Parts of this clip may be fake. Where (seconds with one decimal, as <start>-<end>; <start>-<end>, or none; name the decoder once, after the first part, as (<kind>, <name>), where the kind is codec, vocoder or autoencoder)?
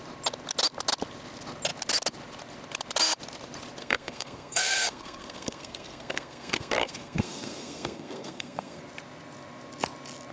3.8-8.8 (codec, SNAC)